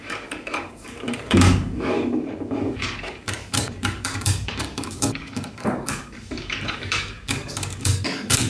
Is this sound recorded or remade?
remade